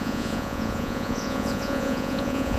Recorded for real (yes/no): no